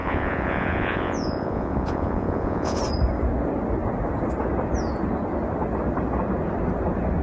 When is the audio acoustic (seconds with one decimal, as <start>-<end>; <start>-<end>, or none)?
2.8-7.2